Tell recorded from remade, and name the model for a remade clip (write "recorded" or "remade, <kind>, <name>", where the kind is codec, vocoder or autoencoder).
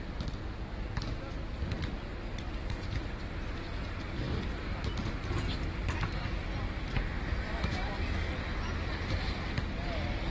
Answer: recorded